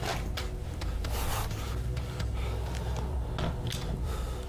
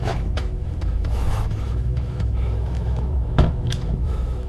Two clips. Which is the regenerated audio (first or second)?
second